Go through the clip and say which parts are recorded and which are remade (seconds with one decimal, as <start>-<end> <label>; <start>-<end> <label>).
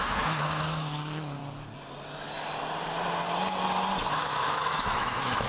0.0-1.4 remade; 1.4-4.1 recorded; 4.1-5.5 remade